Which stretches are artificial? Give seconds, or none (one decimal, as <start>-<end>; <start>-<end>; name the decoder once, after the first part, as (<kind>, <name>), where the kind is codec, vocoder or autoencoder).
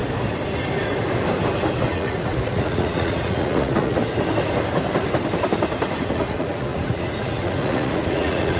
1.9-4.0 (vocoder, Vocos); 6.0-8.6